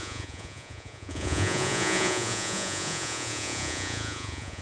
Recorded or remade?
remade